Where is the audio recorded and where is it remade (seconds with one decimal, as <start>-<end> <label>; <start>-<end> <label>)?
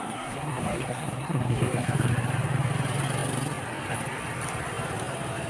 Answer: 0.0-2.1 remade; 2.1-5.5 recorded